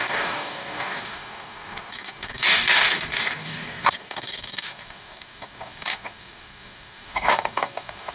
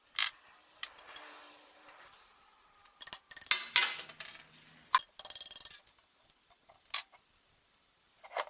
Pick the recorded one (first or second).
second